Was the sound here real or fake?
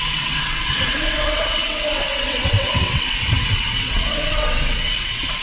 fake